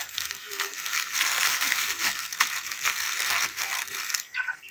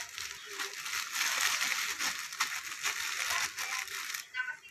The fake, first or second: first